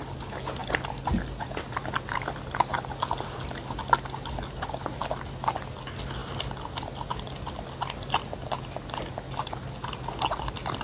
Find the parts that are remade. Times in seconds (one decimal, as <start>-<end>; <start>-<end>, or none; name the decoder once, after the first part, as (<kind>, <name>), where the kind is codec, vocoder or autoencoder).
none